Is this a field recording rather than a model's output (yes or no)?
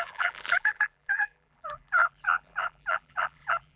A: no